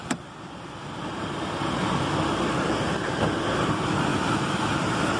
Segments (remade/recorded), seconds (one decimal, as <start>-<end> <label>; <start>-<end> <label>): 0.0-5.2 recorded